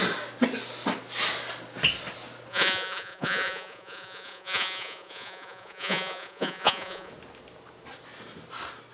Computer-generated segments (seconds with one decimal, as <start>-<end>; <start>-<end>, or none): 2.5-7.1